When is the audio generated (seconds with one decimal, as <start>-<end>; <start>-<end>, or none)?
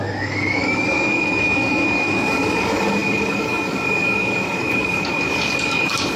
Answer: 0.0-6.2